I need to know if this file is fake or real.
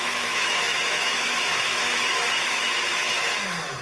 fake